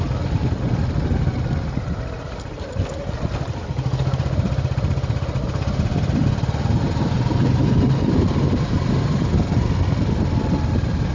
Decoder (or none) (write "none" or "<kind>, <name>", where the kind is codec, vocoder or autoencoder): none